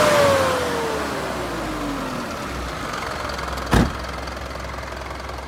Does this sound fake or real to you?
real